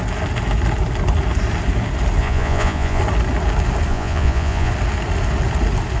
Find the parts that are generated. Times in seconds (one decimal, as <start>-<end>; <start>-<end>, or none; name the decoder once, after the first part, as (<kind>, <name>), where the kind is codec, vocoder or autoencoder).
2.2-3.0 (vocoder, Vocos); 3.9-4.7